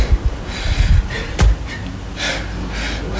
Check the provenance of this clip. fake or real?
real